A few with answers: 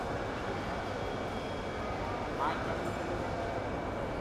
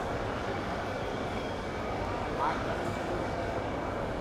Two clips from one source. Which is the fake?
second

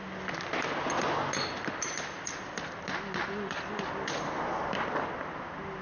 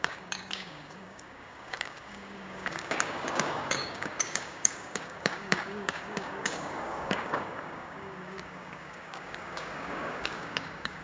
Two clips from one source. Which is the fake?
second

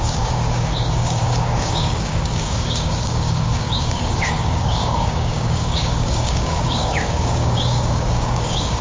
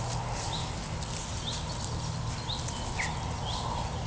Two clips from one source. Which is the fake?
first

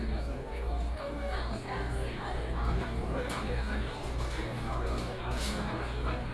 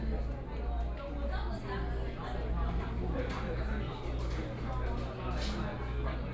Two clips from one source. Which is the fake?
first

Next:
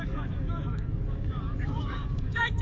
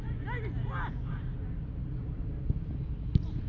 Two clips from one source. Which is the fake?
first